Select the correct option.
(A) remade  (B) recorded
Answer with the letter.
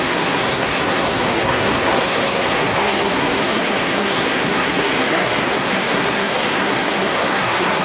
A